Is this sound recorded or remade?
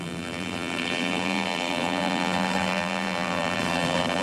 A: remade